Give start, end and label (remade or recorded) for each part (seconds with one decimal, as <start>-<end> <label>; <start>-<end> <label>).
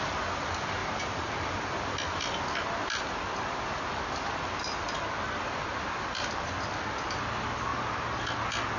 0.0-0.8 recorded; 0.8-1.7 remade; 1.7-7.7 recorded; 7.7-8.2 remade; 8.2-8.8 recorded